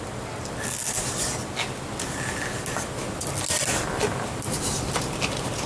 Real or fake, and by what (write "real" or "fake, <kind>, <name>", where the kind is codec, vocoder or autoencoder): real